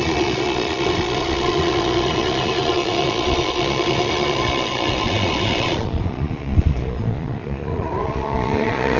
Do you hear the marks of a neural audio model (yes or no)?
yes